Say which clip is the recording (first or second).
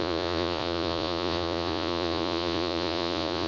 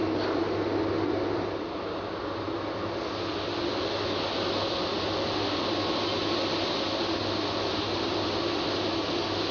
second